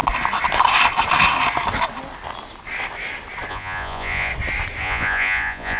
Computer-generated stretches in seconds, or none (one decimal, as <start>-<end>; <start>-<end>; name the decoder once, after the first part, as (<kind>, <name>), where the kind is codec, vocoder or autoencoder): 3.5-4.3 (vocoder, Vocos); 4.8-5.8